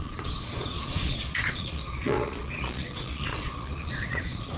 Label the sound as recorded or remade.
remade